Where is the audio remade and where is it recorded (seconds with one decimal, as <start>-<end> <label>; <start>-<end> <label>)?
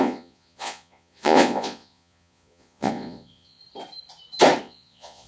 0.0-3.6 remade; 3.6-4.6 recorded; 4.6-5.3 remade